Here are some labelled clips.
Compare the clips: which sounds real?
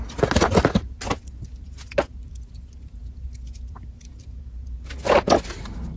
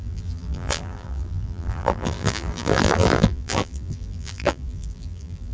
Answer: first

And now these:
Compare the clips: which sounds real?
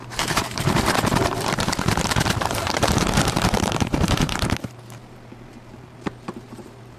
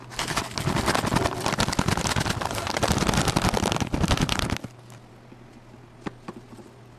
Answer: second